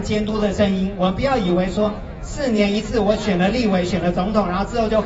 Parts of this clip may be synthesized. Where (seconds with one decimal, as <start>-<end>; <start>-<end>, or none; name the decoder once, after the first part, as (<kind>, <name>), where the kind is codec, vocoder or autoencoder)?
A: 0.4-1.1 (vocoder, Vocos); 1.5-2.8; 3.2-3.9